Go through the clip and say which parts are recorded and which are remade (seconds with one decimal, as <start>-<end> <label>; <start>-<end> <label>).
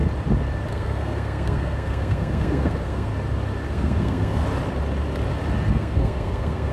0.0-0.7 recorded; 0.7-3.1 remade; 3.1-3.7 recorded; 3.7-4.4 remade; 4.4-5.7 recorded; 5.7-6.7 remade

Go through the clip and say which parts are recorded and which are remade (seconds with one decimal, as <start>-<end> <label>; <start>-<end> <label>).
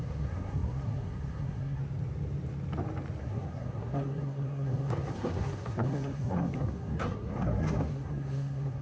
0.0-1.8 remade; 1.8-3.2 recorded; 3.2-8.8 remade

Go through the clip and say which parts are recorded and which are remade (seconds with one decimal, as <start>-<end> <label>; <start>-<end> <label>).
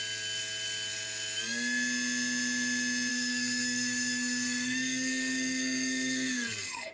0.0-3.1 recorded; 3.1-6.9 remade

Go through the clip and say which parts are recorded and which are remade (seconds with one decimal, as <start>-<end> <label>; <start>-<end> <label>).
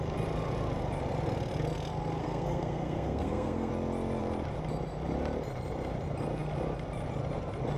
0.0-2.2 recorded; 2.2-3.7 remade; 3.7-7.8 recorded